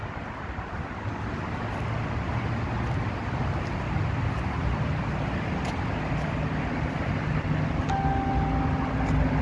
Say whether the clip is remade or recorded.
recorded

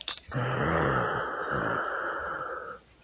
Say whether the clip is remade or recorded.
recorded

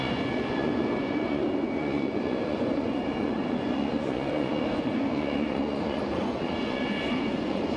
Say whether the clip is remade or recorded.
remade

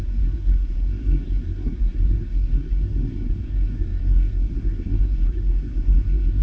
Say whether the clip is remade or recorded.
remade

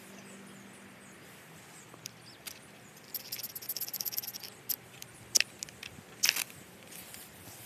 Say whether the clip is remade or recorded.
recorded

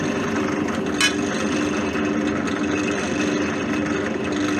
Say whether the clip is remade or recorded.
recorded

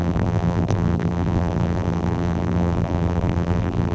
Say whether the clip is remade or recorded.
remade